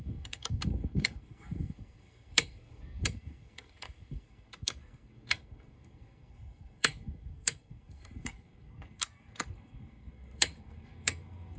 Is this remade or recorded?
remade